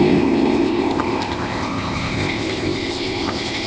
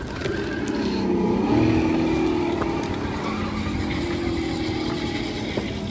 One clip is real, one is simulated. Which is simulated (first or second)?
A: first